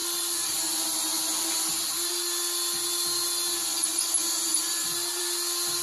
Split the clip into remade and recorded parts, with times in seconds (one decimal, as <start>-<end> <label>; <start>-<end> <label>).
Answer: 0.0-0.6 remade; 0.6-1.3 recorded; 1.3-2.1 remade; 2.1-5.8 recorded